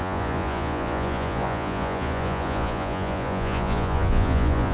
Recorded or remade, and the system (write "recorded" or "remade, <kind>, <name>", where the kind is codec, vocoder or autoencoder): remade, vocoder, Vocos